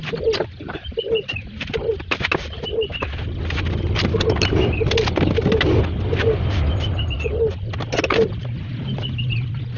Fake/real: real